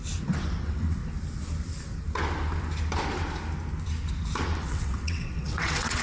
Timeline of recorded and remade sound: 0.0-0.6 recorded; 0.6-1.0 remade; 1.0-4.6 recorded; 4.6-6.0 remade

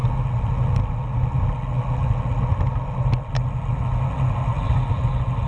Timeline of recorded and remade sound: 0.0-5.5 recorded